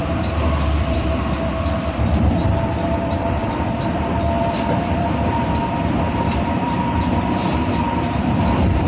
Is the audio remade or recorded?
remade